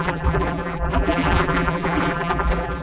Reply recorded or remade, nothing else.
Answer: remade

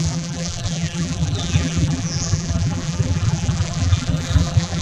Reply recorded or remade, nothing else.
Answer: remade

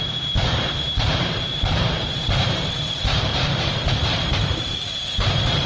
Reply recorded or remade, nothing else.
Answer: remade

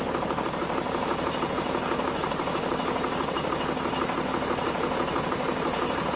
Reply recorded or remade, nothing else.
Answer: remade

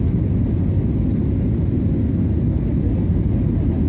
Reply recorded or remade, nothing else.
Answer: recorded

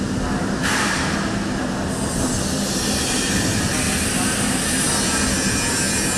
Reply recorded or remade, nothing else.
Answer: recorded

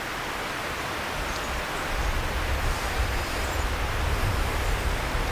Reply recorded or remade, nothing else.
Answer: recorded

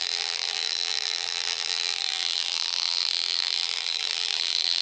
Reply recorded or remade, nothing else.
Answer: remade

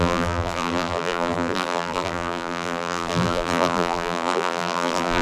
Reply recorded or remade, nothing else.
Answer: remade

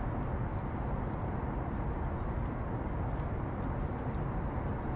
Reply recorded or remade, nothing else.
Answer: recorded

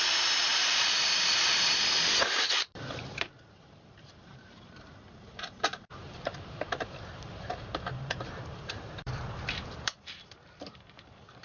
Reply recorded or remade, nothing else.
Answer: remade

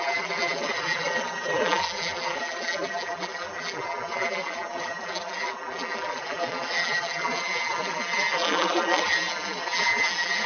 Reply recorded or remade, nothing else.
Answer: remade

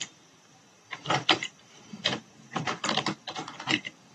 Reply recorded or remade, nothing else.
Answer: remade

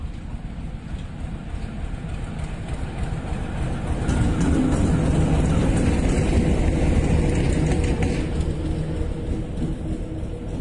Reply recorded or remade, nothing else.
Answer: recorded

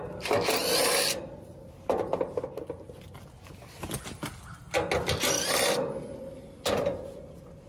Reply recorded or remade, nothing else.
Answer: recorded